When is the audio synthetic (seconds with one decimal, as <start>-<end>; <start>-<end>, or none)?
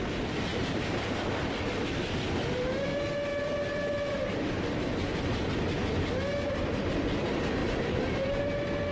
0.5-1.7; 7.6-8.4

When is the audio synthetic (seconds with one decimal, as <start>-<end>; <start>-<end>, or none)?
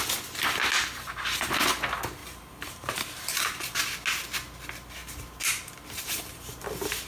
2.2-3.8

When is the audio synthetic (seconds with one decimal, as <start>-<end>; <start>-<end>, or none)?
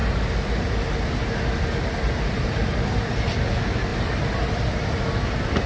none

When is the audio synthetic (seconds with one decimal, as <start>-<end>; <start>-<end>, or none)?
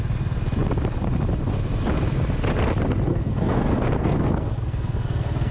3.1-5.5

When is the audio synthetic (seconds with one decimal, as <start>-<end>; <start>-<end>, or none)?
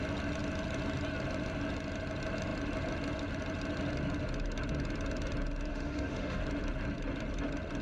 5.7-6.4